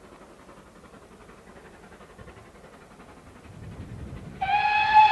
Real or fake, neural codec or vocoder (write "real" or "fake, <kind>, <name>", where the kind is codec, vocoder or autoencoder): real